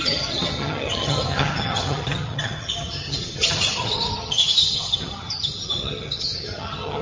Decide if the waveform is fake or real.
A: fake